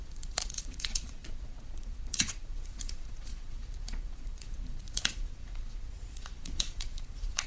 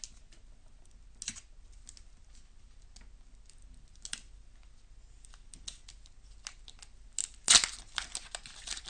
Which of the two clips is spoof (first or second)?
first